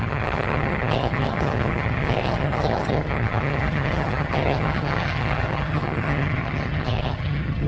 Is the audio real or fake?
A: fake